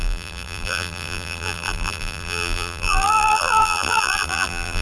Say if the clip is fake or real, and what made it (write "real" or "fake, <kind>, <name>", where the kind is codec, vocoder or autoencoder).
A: fake, vocoder, BigVGAN v2